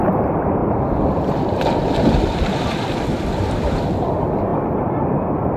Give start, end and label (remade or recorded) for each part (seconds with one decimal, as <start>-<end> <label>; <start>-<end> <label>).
0.0-4.5 remade; 4.5-5.6 recorded